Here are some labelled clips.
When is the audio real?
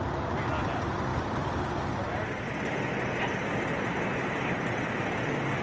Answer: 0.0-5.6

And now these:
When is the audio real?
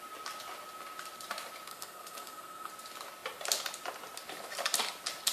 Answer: 0.0-1.7; 2.7-5.3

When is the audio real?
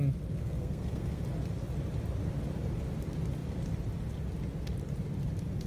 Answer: 0.0-0.4; 1.2-5.7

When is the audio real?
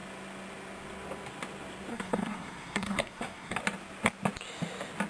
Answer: 0.0-1.9; 3.6-5.1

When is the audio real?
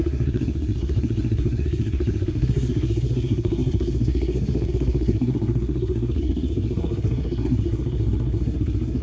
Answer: none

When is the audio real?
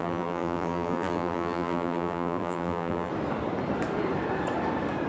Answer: 3.1-5.1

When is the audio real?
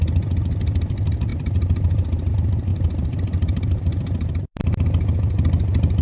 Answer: 0.0-1.3; 2.3-2.7; 4.6-6.0